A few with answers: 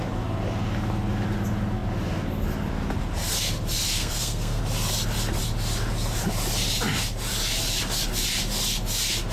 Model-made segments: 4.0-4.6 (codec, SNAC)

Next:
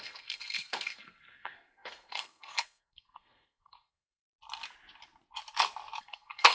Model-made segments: 0.0-4.3 (codec, SNAC); 6.0-6.5

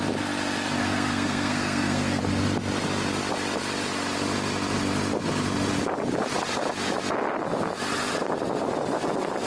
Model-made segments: 0.8-2.2 (codec, SNAC)

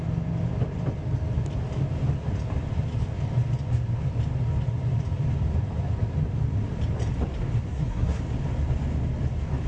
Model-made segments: 7.7-8.2 (codec, SNAC)